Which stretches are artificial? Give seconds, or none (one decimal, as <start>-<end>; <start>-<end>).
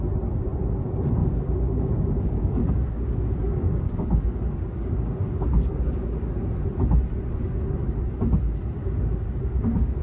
1.2-6.3; 8.8-10.0